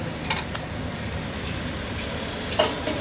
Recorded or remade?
recorded